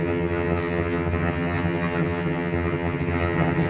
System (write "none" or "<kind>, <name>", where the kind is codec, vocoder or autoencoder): vocoder, HiFi-GAN